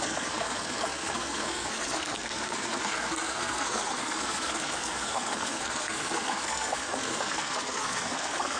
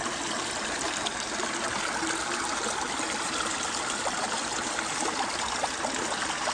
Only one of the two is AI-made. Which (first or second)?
first